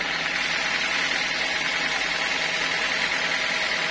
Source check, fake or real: real